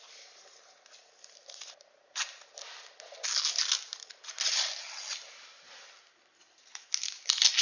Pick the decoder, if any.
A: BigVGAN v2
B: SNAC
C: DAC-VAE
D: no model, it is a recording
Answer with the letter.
D